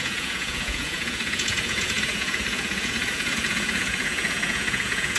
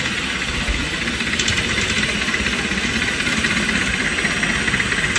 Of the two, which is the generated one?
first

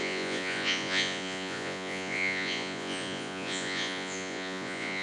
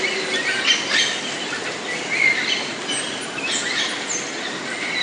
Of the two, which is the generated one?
first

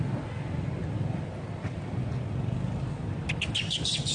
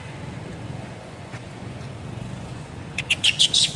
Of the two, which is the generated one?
second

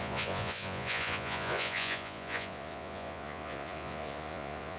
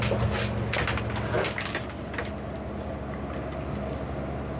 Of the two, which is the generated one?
first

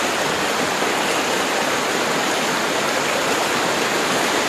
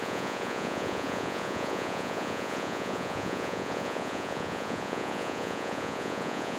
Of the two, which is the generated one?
second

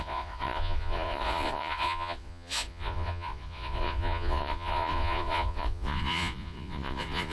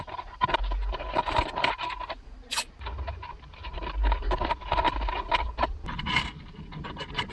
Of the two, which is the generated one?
first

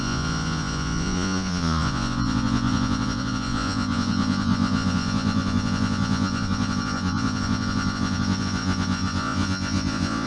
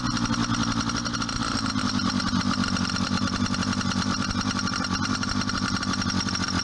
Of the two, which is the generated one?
first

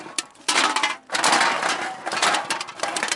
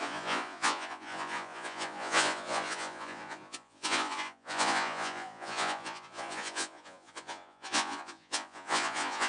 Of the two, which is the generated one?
second